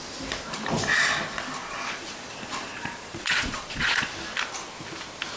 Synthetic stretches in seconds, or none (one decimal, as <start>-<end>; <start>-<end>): 1.6-2.3; 2.7-4.1